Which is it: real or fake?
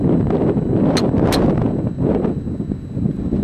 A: real